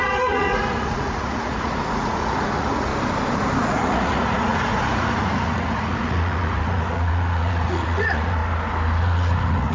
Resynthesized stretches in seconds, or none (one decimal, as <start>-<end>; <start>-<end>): 0.0-2.9; 3.7-8.4; 9.0-9.7